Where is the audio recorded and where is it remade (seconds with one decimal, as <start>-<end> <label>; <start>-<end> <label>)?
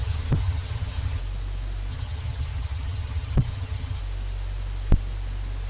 0.0-1.2 remade; 1.2-1.9 recorded; 1.9-4.0 remade; 4.0-5.7 recorded